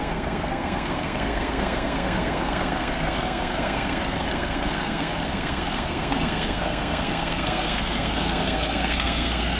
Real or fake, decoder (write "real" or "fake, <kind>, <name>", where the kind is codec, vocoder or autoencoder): fake, codec, SNAC